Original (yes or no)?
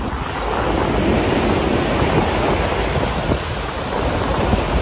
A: yes